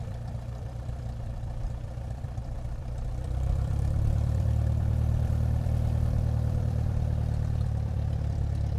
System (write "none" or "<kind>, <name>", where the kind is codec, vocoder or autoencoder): vocoder, BigVGAN v2